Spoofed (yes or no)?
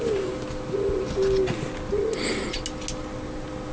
no